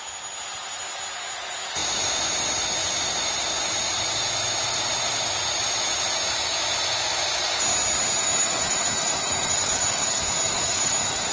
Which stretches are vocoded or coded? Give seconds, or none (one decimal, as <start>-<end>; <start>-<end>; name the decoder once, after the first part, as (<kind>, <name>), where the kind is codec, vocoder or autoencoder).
8.2-11.3 (autoencoder, DAC-VAE)